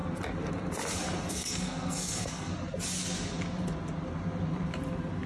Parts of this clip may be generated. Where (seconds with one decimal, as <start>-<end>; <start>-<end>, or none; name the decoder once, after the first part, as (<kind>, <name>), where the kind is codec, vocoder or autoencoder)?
1.3-2.5 (codec, SNAC)